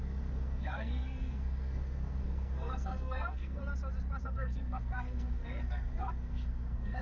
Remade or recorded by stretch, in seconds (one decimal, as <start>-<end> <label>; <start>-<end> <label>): 0.0-3.6 remade; 3.6-4.2 recorded; 4.2-7.0 remade